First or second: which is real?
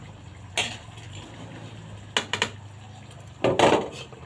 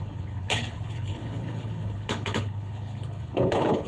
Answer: first